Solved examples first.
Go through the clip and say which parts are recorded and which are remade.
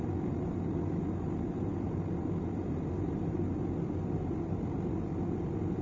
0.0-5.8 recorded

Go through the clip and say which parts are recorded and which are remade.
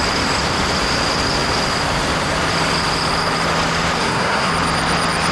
0.0-4.0 recorded; 4.0-4.5 remade; 4.5-5.3 recorded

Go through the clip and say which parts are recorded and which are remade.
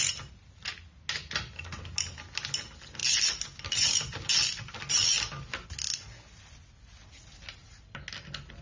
0.0-8.6 recorded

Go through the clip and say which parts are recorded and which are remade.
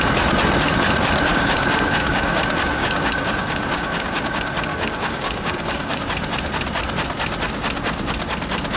0.0-1.3 recorded; 1.3-2.4 remade; 2.4-2.8 recorded; 2.8-4.2 remade; 4.2-4.7 recorded; 4.7-6.0 remade; 6.0-8.8 recorded